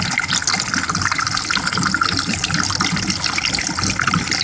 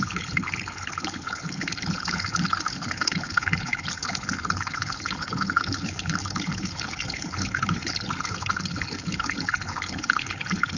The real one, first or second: first